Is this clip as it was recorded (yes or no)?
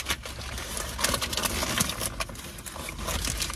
yes